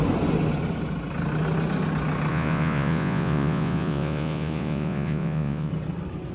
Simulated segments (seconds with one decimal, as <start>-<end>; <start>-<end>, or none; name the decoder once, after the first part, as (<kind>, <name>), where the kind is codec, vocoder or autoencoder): 2.3-5.7 (vocoder, Vocos)